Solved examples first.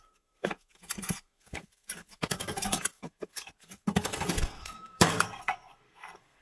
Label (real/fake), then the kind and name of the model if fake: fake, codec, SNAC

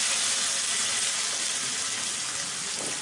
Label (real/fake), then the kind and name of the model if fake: real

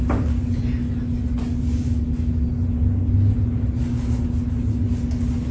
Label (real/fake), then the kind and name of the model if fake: real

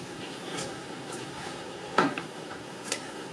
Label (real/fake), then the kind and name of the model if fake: fake, codec, SNAC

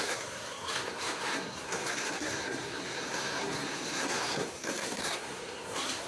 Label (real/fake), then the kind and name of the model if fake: fake, codec, SNAC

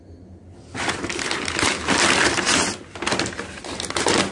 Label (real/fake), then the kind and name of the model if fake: real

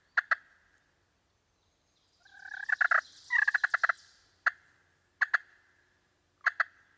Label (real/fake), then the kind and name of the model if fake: real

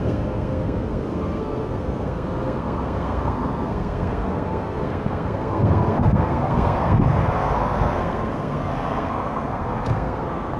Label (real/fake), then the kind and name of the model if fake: fake, codec, SNAC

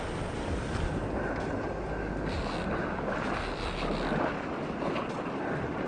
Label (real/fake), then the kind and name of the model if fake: real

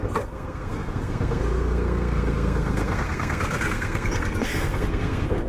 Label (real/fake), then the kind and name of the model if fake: fake, codec, SNAC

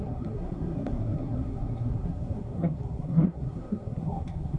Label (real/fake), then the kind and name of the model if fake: fake, codec, SNAC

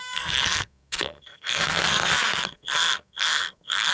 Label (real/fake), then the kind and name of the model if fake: fake, codec, SNAC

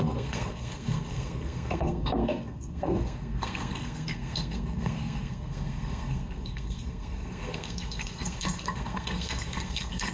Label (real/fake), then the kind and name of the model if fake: fake, codec, SNAC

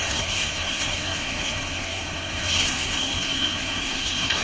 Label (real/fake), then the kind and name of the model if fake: fake, codec, SNAC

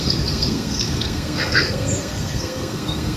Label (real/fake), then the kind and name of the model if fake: fake, codec, SNAC